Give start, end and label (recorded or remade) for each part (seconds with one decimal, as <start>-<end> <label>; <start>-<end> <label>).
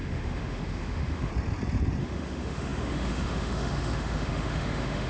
0.0-1.3 remade; 1.3-2.0 recorded; 2.0-5.1 remade